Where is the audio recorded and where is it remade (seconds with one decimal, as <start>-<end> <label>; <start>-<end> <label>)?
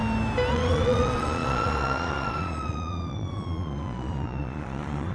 0.0-0.5 recorded; 0.5-5.1 remade